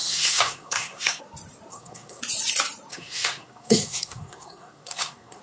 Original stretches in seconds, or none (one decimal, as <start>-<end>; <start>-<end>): 1.2-1.7; 2.2-2.9